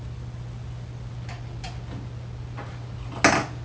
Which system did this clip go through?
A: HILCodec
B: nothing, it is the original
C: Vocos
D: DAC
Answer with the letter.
B